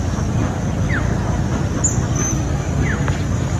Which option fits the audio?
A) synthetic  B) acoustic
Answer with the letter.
B